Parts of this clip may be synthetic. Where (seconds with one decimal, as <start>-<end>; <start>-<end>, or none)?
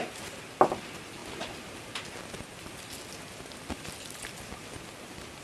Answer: none